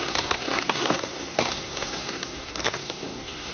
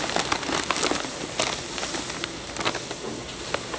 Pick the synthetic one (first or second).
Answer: first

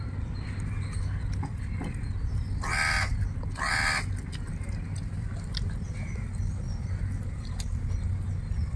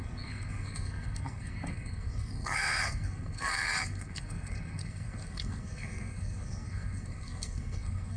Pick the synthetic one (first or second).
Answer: second